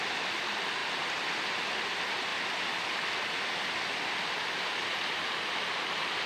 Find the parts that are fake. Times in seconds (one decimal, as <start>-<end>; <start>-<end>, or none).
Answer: 0.8-1.5; 2.3-3.1